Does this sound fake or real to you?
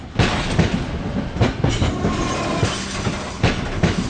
real